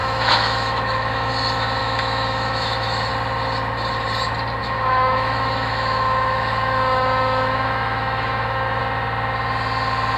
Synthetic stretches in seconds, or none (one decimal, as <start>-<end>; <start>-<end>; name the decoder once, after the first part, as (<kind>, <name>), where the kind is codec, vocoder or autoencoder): 0.0-1.3 (autoencoder, DAC-VAE); 1.8-3.1; 4.6-8.8

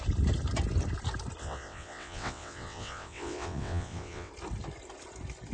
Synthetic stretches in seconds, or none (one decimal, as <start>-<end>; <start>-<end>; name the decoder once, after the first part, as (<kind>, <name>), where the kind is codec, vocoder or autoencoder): 1.4-4.3 (vocoder, WaveNeXt)

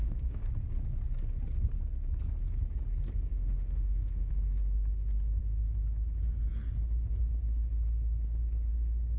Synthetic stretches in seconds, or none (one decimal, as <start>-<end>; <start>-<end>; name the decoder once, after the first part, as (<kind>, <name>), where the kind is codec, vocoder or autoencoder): 0.0-0.5 (autoencoder, DAC-VAE); 3.3-4.3

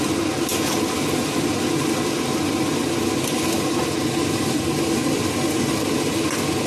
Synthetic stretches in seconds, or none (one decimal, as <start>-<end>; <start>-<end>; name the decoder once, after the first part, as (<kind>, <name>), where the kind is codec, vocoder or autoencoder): 5.0-6.2 (vocoder, BigVGAN v2)

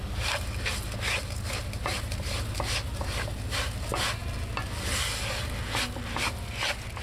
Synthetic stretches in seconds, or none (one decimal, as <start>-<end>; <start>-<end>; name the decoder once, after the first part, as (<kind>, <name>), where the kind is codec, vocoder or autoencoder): none

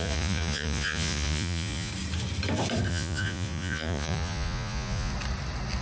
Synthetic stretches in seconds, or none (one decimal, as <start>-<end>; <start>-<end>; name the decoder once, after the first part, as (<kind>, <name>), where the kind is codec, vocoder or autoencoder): 0.0-1.9 (vocoder, Vocos); 2.9-5.1